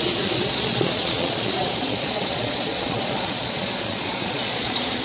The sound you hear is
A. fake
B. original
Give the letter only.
A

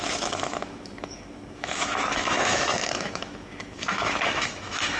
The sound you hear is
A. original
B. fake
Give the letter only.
B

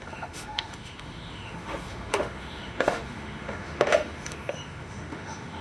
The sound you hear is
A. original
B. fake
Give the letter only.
B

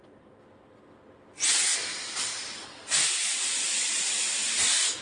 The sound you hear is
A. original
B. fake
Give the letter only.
A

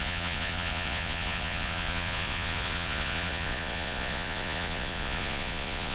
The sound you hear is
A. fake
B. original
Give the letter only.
A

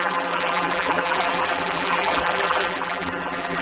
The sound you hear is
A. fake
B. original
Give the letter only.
A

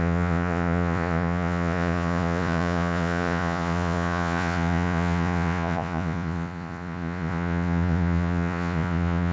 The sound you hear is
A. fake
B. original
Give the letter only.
A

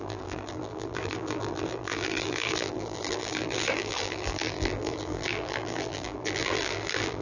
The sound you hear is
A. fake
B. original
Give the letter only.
A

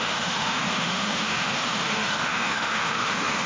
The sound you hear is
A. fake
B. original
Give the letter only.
A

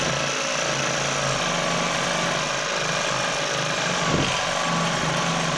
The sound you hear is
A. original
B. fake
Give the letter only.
A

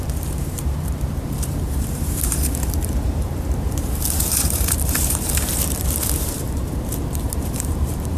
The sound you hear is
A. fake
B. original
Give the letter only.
A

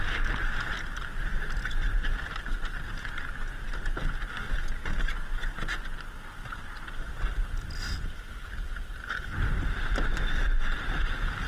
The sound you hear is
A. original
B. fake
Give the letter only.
A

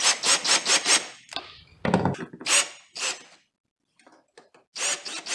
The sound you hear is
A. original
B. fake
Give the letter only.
A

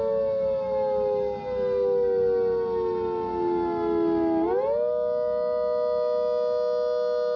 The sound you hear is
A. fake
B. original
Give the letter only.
B